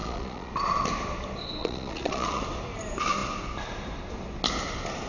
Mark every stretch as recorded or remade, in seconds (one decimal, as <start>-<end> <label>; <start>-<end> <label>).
0.0-0.5 remade; 0.5-1.6 recorded; 1.6-2.4 remade; 2.4-5.1 recorded